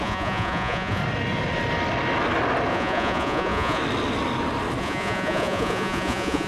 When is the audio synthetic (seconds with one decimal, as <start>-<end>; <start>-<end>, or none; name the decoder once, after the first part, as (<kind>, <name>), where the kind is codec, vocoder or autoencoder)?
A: 0.0-1.0 (vocoder, Vocos); 2.7-3.8; 4.8-6.5